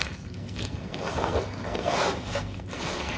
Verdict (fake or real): fake